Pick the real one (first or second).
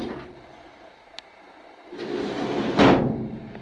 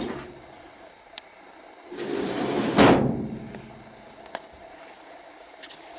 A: first